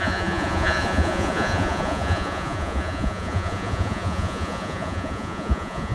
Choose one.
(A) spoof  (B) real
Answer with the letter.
A